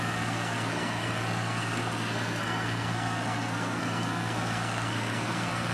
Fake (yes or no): yes